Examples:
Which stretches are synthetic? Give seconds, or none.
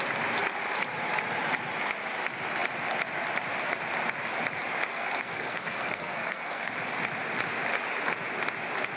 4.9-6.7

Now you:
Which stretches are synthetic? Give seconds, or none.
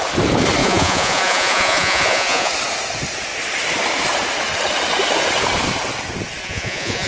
0.6-2.5; 6.4-7.1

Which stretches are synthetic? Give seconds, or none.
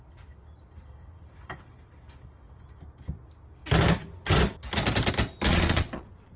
5.5-6.4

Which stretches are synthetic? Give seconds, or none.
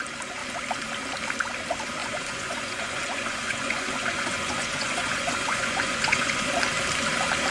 2.0-6.5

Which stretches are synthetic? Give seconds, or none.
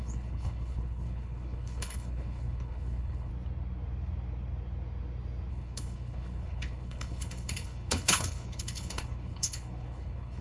0.0-3.3; 5.5-10.4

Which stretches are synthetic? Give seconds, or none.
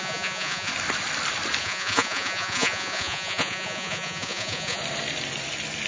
0.0-0.7; 1.6-4.8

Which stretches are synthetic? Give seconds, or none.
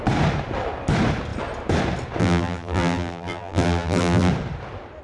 2.2-4.3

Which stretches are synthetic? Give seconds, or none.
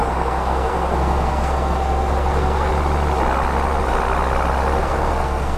0.0-2.7; 4.8-5.6